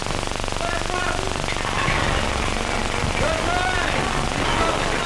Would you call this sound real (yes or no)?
yes